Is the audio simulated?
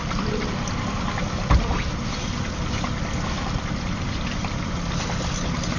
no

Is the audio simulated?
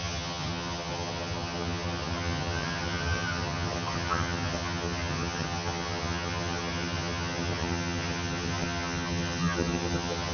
yes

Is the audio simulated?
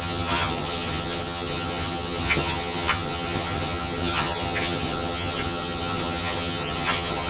yes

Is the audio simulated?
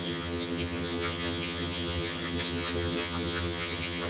yes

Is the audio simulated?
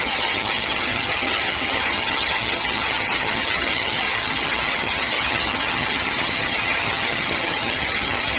yes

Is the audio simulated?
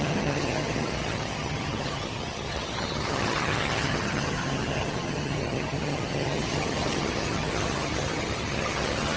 yes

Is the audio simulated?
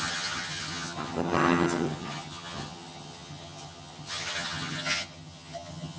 yes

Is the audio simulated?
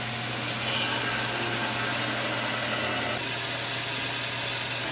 no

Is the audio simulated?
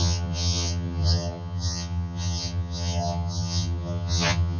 yes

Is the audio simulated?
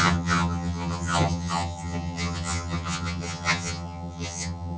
yes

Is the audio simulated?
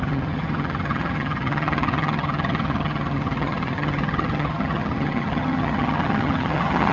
yes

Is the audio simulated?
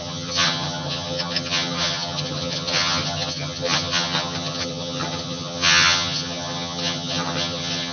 yes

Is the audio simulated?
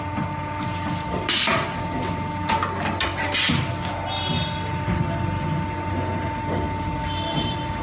no